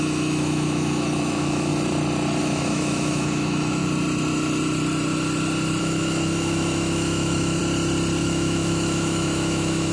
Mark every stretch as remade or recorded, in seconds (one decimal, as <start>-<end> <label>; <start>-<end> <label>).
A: 0.0-1.7 remade; 1.7-2.4 recorded; 2.4-3.8 remade; 3.8-5.8 recorded; 5.8-7.6 remade; 7.6-8.2 recorded; 8.2-9.9 remade

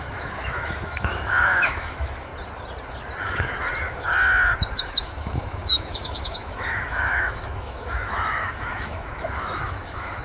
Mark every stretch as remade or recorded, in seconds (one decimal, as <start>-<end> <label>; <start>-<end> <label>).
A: 0.0-2.3 remade; 2.3-3.2 recorded; 3.2-4.1 remade; 4.1-4.7 recorded; 4.7-10.2 remade

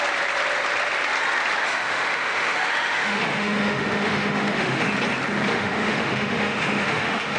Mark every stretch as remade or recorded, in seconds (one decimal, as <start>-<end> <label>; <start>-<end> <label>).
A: 0.0-1.6 recorded; 1.6-4.8 remade; 4.8-5.5 recorded; 5.5-7.4 remade

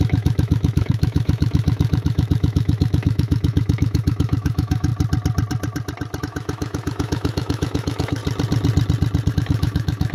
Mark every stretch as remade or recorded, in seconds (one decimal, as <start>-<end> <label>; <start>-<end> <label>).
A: 0.0-4.9 remade; 4.9-6.2 recorded; 6.2-8.2 remade; 8.2-9.3 recorded; 9.3-10.1 remade

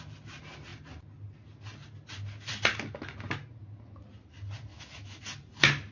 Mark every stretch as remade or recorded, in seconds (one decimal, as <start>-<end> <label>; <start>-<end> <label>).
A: 0.0-4.7 recorded; 4.7-5.2 remade; 5.2-5.9 recorded

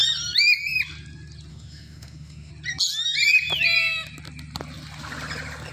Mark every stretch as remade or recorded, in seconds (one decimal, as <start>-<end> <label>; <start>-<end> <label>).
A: 0.0-1.5 recorded; 1.5-2.5 remade; 2.5-5.7 recorded

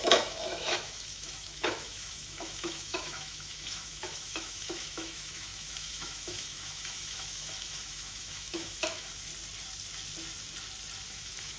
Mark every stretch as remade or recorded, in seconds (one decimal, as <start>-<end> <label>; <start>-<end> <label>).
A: 0.0-9.3 remade; 9.3-11.1 recorded; 11.1-11.6 remade